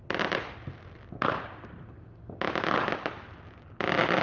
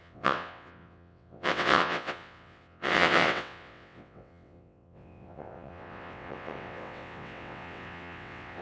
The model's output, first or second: second